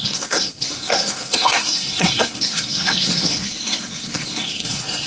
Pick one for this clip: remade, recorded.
remade